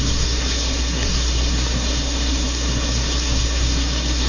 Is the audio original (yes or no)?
no